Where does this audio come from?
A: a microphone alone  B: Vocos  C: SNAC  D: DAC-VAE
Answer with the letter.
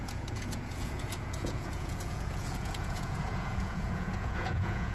B